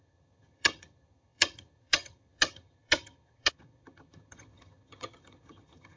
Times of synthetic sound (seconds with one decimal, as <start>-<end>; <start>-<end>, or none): 0.0-6.0

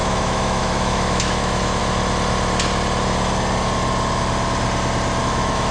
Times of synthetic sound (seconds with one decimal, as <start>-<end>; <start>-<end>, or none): 0.0-1.8; 5.2-5.7

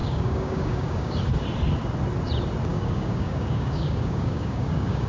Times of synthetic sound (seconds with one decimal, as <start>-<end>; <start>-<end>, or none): 0.0-1.2; 2.7-5.1

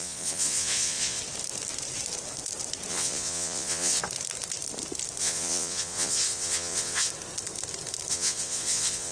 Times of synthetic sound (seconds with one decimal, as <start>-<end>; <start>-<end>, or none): 0.0-1.2; 2.9-4.0; 5.2-7.1; 8.1-9.1

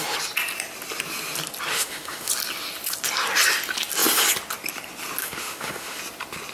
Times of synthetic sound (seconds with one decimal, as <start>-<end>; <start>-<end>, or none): 1.7-2.3; 5.2-6.0